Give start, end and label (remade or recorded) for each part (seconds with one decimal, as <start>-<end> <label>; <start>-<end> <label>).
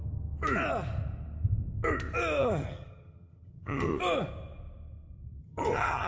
0.0-2.4 recorded; 2.4-3.9 remade; 3.9-5.4 recorded; 5.4-6.1 remade